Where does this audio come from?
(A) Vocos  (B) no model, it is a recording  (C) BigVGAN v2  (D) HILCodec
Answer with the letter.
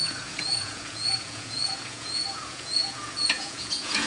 A